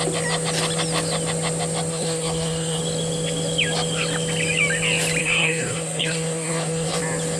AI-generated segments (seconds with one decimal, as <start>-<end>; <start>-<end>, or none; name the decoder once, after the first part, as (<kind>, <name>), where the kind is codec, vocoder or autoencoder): 1.9-2.8 (codec, SNAC); 5.2-7.0